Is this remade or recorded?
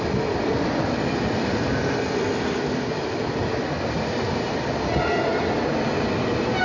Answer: recorded